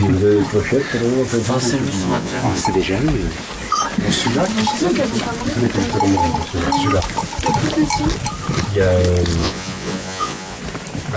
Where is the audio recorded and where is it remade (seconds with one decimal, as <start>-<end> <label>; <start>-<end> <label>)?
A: 0.0-2.0 recorded; 2.0-2.6 remade; 2.6-9.4 recorded; 9.4-10.6 remade; 10.6-11.2 recorded